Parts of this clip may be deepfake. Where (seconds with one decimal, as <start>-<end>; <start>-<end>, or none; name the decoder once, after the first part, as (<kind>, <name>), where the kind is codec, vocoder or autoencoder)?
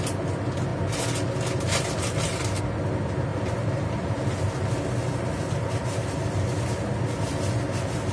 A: 3.3-4.2 (vocoder, BigVGAN v2)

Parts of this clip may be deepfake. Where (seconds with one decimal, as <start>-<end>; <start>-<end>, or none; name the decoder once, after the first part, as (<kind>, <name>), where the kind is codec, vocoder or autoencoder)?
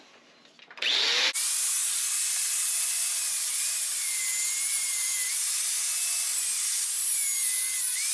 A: 1.8-4.2 (vocoder, BigVGAN v2)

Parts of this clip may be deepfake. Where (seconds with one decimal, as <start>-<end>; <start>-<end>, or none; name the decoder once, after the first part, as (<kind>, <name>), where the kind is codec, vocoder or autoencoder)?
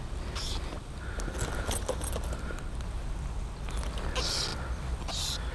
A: 4.5-5.5 (vocoder, BigVGAN v2)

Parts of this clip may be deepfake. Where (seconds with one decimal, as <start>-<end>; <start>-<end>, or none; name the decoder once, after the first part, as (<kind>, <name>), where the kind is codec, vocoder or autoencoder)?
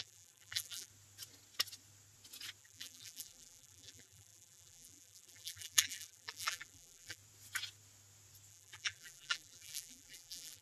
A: 0.0-0.9 (vocoder, BigVGAN v2); 2.6-7.2; 8.5-10.6